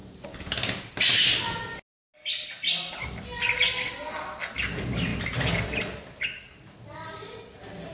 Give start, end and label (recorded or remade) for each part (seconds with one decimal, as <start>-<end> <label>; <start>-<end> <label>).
0.0-7.9 recorded